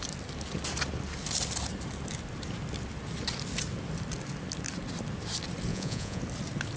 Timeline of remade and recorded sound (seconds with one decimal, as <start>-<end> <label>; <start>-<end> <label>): 0.0-5.7 recorded; 5.7-6.2 remade; 6.2-6.8 recorded